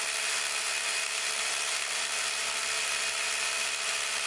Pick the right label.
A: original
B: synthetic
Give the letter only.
A